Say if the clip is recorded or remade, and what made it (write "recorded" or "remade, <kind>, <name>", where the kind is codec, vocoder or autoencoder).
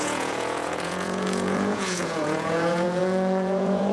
remade, vocoder, Vocos